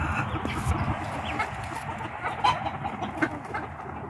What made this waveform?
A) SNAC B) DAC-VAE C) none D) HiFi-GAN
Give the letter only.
C